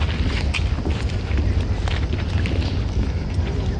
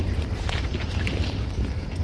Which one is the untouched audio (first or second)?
first